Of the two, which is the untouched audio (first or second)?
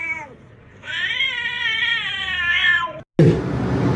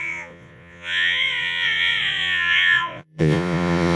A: first